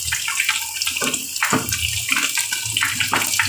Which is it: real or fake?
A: real